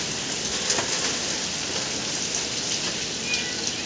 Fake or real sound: real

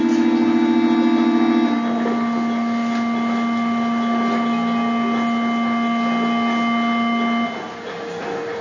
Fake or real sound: real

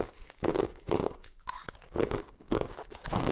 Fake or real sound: fake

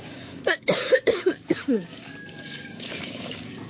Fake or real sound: fake